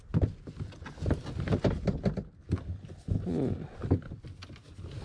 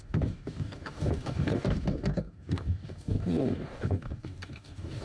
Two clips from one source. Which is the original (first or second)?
first